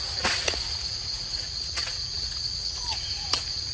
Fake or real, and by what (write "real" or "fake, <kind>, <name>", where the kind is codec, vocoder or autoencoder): fake, vocoder, Vocos